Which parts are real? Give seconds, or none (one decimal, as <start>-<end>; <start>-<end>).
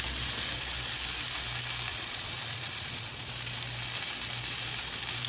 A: 0.0-1.9; 3.3-5.3